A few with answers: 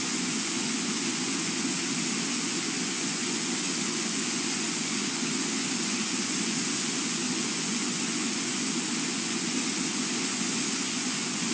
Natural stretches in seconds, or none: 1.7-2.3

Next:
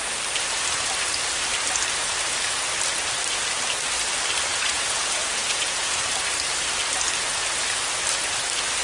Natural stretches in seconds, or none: 0.0-4.5; 6.0-8.8

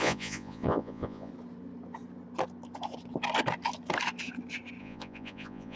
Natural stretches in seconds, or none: 1.3-4.8

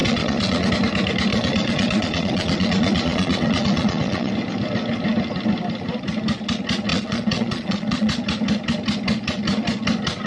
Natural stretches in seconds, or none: 0.7-1.3; 4.3-6.9; 8.1-10.3

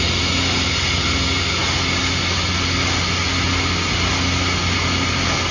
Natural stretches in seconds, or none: 0.0-5.5

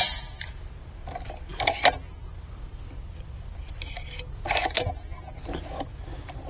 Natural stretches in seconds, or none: 0.0-6.5

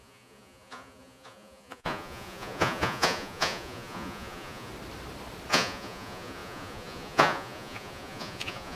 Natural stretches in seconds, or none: 4.7-5.5